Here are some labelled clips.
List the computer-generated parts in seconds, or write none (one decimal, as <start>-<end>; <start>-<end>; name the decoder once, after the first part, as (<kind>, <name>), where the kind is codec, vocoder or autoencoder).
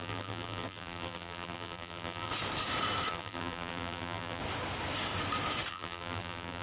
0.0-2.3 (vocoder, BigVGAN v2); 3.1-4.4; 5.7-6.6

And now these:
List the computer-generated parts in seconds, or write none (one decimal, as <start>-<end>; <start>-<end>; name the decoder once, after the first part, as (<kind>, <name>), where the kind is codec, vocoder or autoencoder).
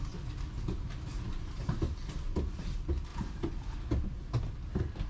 none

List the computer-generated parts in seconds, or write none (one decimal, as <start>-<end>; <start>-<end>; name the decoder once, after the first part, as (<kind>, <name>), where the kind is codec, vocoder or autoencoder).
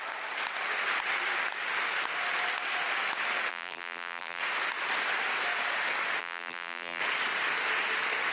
3.5-4.4 (vocoder, BigVGAN v2); 6.2-7.0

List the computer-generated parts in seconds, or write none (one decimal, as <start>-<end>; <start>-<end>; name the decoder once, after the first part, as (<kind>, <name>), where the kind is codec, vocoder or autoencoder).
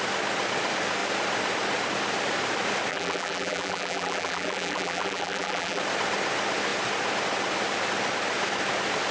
2.9-5.8 (vocoder, BigVGAN v2)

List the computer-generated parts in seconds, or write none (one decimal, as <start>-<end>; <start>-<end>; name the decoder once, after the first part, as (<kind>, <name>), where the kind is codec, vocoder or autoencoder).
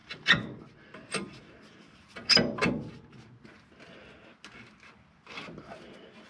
0.0-1.4 (vocoder, BigVGAN v2)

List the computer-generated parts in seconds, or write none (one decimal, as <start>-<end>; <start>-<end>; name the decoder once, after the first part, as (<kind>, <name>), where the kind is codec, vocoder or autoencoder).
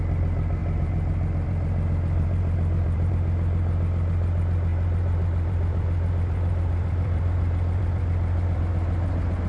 0.6-3.1 (vocoder, BigVGAN v2); 4.7-8.6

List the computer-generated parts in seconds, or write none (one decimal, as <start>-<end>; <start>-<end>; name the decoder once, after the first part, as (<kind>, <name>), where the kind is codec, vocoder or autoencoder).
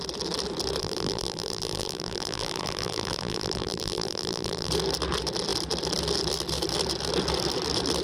0.8-4.7 (vocoder, BigVGAN v2)